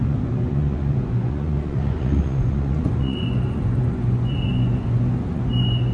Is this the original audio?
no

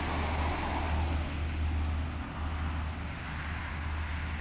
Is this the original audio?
yes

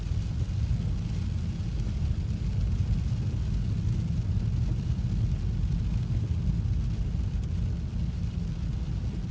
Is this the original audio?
yes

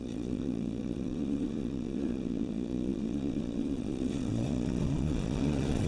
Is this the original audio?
no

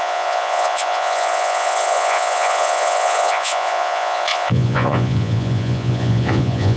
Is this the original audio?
no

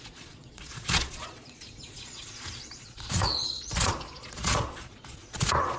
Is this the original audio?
no